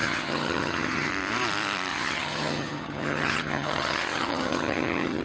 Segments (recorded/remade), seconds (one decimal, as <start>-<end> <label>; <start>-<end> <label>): 0.0-1.1 remade; 1.1-1.9 recorded; 1.9-5.2 remade